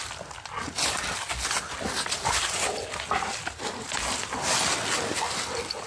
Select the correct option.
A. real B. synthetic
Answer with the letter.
A